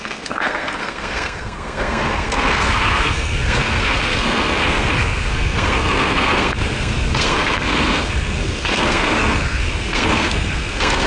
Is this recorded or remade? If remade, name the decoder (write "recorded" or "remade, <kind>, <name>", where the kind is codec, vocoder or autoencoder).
remade, codec, SNAC